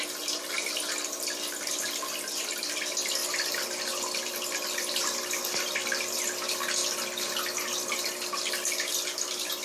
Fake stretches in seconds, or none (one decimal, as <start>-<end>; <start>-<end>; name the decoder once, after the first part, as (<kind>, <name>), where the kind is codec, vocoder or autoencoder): none

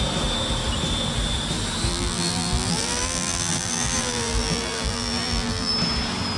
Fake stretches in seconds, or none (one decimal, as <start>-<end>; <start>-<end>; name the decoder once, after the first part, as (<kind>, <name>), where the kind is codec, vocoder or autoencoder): 1.9-5.7 (vocoder, BigVGAN v2)

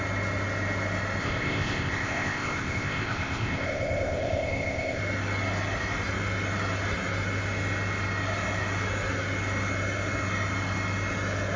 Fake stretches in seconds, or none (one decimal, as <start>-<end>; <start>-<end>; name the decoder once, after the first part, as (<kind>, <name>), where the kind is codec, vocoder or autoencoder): 1.2-5.0 (codec, ZipCodec)

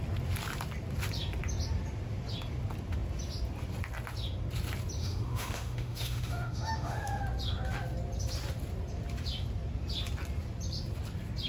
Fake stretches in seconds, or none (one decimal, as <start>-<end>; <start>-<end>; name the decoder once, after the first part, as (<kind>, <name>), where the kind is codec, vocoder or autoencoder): 5.0-7.2 (autoencoder, DAC-VAE)

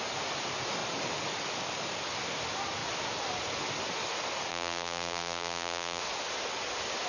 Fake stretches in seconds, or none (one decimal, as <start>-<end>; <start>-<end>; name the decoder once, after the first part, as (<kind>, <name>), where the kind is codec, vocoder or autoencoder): 4.5-6.0 (vocoder, BigVGAN v2)

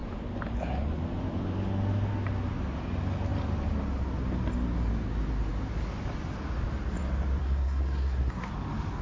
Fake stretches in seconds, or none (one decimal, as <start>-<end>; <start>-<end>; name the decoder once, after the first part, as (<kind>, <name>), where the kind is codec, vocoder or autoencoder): 7.4-8.5 (codec, SNAC)

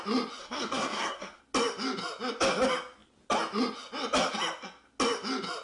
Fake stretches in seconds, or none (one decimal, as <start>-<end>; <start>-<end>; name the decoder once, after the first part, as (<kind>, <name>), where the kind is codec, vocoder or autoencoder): 0.4-1.4 (codec, SNAC)

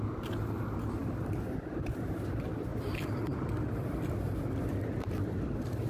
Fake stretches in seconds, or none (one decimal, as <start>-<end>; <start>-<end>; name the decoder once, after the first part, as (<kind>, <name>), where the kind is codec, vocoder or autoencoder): 1.0-1.7 (vocoder, BigVGAN v2); 2.7-5.9